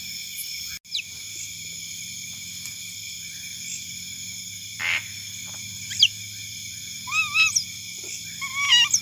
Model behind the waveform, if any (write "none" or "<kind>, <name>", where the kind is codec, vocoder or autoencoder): none